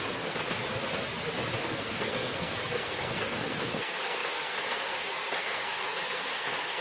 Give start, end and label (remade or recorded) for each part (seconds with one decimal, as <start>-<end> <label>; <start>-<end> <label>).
0.0-0.6 remade; 0.6-1.6 recorded; 1.6-6.8 remade